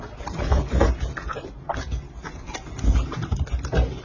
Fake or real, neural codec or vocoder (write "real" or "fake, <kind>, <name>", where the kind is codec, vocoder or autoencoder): real